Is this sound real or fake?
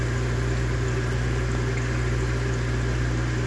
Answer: real